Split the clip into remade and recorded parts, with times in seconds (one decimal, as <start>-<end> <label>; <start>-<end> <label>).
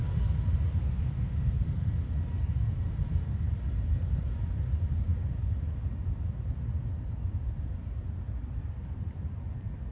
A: 0.0-0.8 recorded; 0.8-1.9 remade; 1.9-9.9 recorded